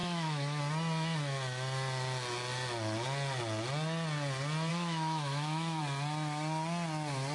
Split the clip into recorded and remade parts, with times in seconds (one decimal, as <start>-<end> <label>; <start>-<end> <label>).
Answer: 0.0-0.6 remade; 0.6-4.7 recorded; 4.7-5.8 remade; 5.8-7.3 recorded